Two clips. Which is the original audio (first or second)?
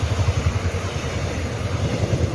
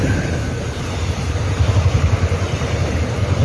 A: first